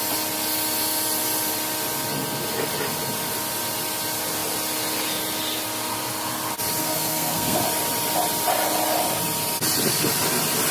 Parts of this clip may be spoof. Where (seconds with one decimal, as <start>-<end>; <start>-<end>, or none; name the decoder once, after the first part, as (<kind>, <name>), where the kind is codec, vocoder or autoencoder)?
6.8-7.6 (codec, SNAC)